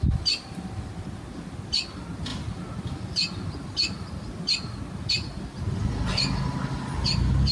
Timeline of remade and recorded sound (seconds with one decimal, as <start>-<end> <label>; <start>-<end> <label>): 0.0-7.5 recorded